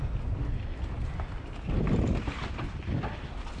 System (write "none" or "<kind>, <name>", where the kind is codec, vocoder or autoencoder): none